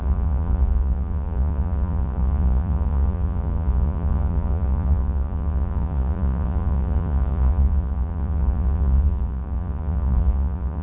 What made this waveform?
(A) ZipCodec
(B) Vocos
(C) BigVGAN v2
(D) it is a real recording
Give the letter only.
B